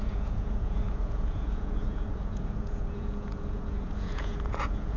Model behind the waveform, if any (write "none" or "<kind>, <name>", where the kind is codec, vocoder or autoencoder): vocoder, Vocos